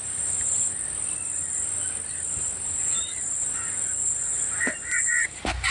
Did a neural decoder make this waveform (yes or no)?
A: no